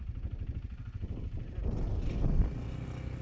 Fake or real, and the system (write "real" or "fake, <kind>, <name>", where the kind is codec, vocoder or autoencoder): real